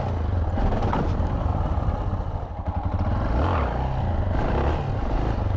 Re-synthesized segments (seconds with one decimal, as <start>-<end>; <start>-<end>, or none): none